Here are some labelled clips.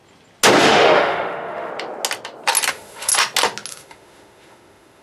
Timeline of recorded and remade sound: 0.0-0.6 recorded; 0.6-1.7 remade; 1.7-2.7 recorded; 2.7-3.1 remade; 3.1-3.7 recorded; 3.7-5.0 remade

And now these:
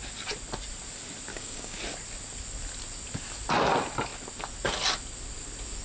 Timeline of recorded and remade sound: 0.0-1.3 recorded; 1.3-1.8 remade; 1.8-5.8 recorded

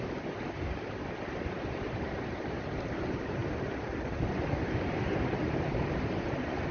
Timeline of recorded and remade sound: 0.0-6.7 recorded

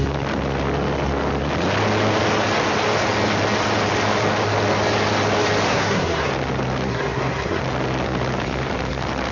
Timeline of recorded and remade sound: 0.0-5.7 recorded; 5.7-6.3 remade; 6.3-6.9 recorded; 6.9-7.6 remade; 7.6-9.3 recorded